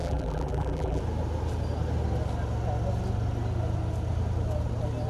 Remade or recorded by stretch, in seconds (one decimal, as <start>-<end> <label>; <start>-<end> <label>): 0.0-1.0 remade; 1.0-5.1 recorded